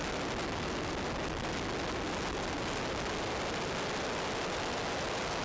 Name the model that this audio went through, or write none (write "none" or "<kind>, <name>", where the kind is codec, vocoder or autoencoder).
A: none